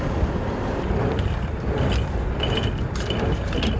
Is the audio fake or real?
real